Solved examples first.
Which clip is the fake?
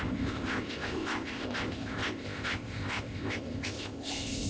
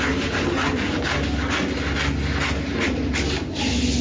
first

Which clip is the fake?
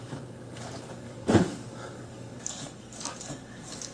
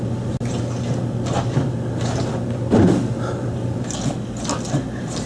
first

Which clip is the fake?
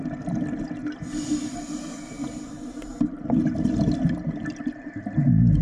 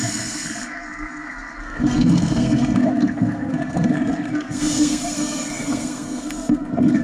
second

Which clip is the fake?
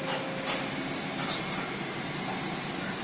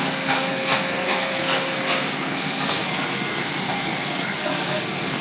second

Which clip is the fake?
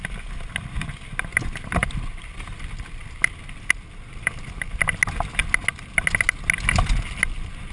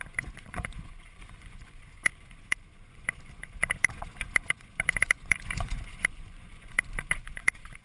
second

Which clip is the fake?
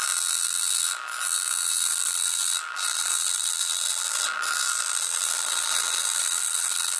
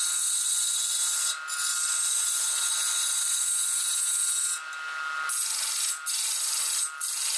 first